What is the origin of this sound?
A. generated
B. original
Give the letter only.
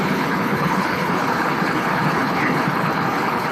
A